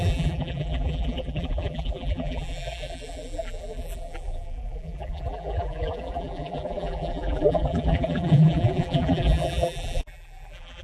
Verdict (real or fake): fake